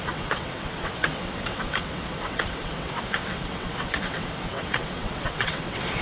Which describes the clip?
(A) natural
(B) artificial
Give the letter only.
B